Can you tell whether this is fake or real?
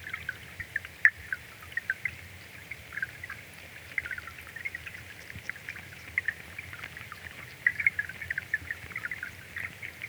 fake